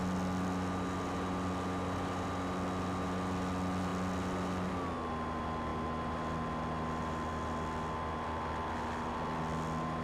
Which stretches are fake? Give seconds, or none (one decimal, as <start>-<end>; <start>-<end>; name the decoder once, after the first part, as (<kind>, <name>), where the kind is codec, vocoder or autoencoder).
none